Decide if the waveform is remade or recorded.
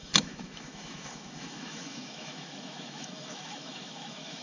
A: remade